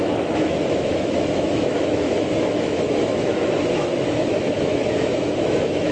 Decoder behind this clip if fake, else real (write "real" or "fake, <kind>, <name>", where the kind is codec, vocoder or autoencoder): fake, autoencoder, DAC-VAE